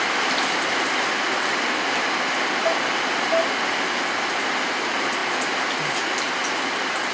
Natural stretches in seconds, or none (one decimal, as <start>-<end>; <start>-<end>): 0.0-7.1